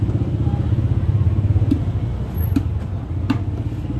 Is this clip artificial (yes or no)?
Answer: no